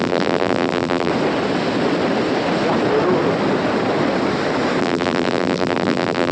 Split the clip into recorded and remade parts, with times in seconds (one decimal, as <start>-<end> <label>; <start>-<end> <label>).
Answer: 0.0-1.1 remade; 1.1-4.8 recorded; 4.8-6.3 remade